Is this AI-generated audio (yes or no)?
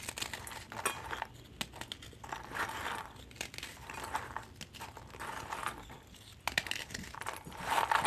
no